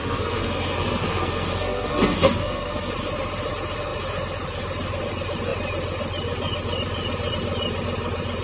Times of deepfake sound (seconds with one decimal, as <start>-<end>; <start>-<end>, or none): 0.0-2.9